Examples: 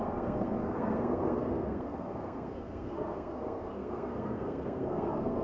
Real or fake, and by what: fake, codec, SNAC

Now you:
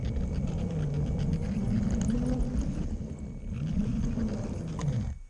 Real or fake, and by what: real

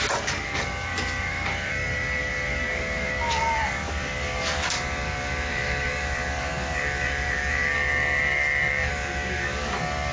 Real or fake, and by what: fake, codec, DAC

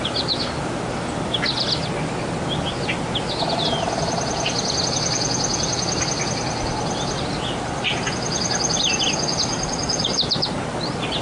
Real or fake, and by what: real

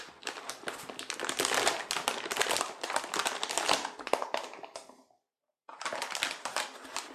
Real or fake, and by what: real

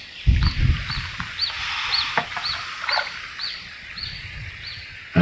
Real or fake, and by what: real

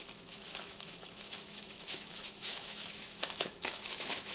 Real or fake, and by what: fake, autoencoder, DAC-VAE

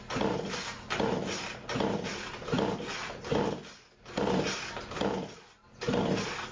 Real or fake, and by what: real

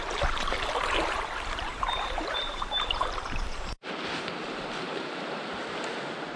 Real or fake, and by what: fake, vocoder, BigVGAN v2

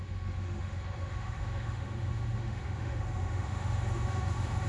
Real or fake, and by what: fake, autoencoder, DAC-VAE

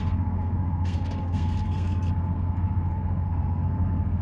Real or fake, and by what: fake, codec, SNAC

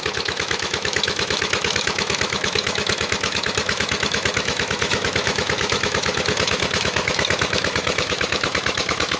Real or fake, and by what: fake, autoencoder, DAC-VAE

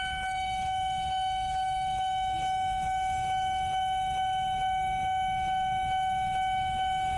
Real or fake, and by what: fake, autoencoder, DAC-VAE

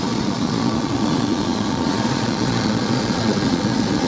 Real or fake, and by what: fake, vocoder, Vocos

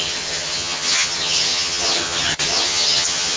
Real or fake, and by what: fake, vocoder, HiFi-GAN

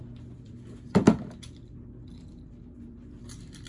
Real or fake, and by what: fake, vocoder, BigVGAN v2